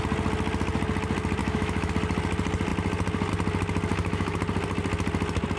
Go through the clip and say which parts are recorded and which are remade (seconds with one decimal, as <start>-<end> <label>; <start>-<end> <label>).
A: 0.0-1.4 recorded; 1.4-1.9 remade; 1.9-3.9 recorded; 3.9-4.4 remade; 4.4-5.6 recorded